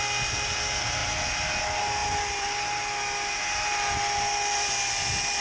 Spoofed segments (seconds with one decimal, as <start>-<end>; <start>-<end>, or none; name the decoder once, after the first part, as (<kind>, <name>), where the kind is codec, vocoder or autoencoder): none